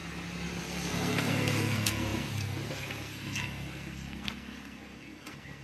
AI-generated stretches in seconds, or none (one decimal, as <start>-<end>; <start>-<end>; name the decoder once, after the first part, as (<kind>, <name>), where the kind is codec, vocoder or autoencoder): 0.6-5.6 (codec, SNAC)